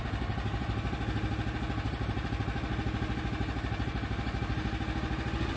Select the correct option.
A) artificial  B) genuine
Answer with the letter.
B